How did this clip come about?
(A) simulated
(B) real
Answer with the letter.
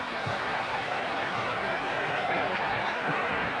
A